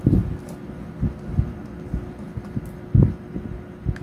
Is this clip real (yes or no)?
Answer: yes